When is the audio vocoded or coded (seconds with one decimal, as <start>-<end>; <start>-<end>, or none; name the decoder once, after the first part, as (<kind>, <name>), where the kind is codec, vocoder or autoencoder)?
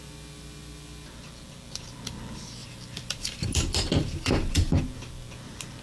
2.6-4.8 (vocoder, BigVGAN v2)